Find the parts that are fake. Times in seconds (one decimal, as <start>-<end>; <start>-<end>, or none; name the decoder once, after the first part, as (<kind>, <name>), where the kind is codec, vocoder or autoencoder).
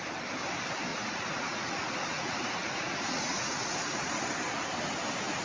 0.9-4.1 (vocoder, Vocos)